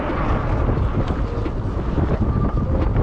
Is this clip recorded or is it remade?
recorded